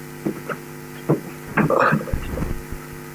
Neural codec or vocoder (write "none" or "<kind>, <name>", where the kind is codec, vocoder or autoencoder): none